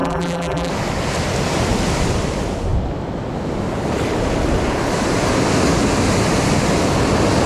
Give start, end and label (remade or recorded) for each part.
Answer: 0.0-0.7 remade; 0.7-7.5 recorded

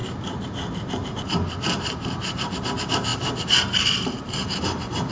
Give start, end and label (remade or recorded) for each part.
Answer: 0.0-5.1 remade

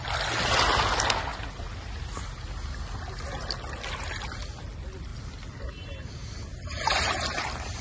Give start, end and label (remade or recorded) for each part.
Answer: 0.0-1.3 recorded; 1.3-2.3 remade; 2.3-5.1 recorded; 5.1-7.8 remade

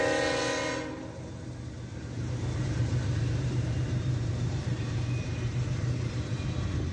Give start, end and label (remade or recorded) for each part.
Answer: 0.0-2.2 recorded; 2.2-6.3 remade; 6.3-6.9 recorded

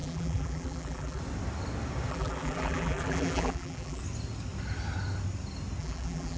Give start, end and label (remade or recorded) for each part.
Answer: 0.0-1.2 remade; 1.2-2.1 recorded; 2.1-4.0 remade; 4.0-5.8 recorded; 5.8-6.4 remade

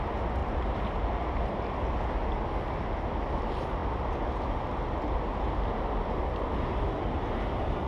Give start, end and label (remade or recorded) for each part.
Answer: 0.0-0.4 recorded; 0.4-1.9 remade; 1.9-7.9 recorded

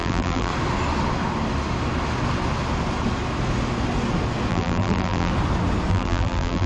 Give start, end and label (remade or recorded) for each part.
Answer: 0.0-0.5 remade; 0.5-4.5 recorded; 4.5-5.3 remade; 5.3-5.9 recorded; 5.9-6.7 remade

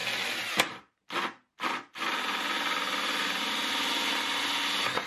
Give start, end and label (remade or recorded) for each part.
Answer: 0.0-5.1 recorded